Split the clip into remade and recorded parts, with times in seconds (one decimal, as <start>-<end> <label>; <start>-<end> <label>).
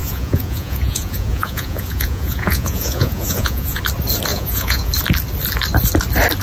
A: 0.0-3.8 remade; 3.8-4.3 recorded; 4.3-4.9 remade; 4.9-6.4 recorded